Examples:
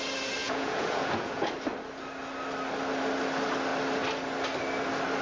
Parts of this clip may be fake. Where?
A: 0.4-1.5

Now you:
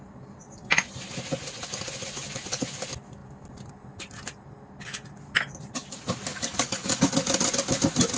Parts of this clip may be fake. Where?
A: 6.3-7.1